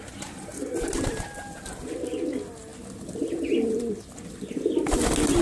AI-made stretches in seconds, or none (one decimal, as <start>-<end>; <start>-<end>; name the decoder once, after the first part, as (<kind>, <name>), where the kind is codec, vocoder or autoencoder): none